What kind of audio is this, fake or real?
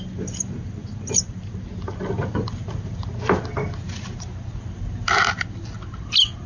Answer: real